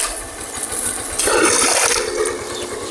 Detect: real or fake real